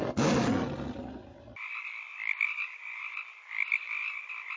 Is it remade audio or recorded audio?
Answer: recorded